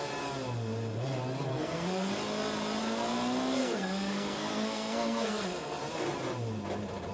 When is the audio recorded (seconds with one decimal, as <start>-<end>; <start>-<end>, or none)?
0.0-1.5; 2.1-3.6; 5.8-7.1